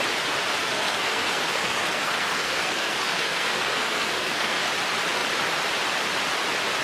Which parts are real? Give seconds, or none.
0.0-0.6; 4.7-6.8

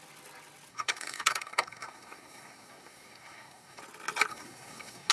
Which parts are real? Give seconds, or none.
0.0-0.7; 3.8-4.3

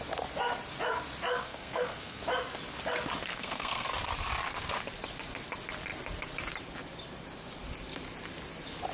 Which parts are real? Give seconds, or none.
0.0-1.4; 2.2-3.3; 3.9-8.9

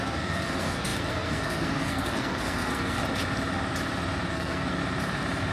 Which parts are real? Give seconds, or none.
3.0-4.3; 4.8-5.5

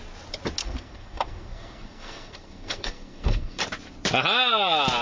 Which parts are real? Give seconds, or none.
0.0-0.6; 3.6-5.0

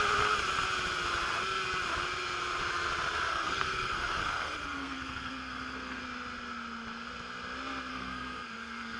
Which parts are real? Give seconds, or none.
0.0-3.3; 6.0-7.9